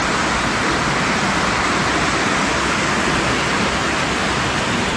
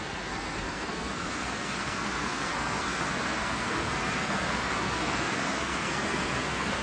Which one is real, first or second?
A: first